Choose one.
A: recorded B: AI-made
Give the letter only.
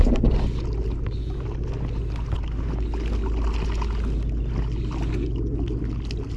A